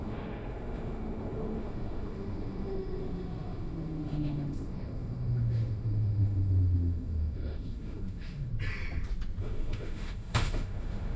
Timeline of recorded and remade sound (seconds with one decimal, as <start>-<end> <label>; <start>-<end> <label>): 0.0-8.5 remade; 8.5-9.4 recorded; 9.4-11.2 remade